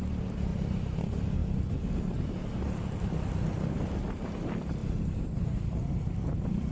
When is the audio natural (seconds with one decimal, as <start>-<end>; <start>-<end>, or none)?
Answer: 0.0-0.5; 1.0-4.8; 6.2-6.7